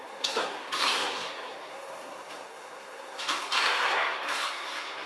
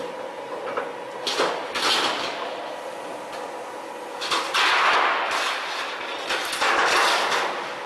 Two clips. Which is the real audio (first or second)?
second